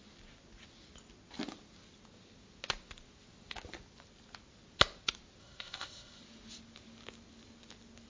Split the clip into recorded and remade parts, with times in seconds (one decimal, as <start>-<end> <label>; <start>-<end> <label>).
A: 0.0-5.4 recorded; 5.4-6.2 remade; 6.2-8.1 recorded